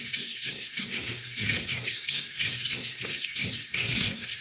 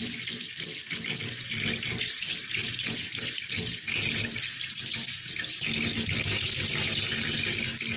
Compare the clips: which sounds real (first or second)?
second